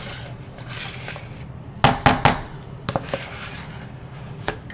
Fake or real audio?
real